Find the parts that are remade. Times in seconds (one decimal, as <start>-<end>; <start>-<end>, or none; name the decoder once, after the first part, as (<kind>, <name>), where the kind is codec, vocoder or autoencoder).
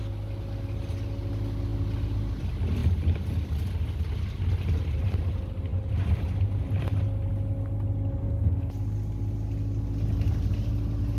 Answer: 8.2-8.7 (codec, SNAC)